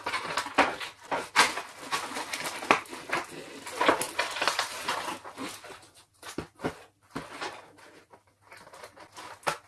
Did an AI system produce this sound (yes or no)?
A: no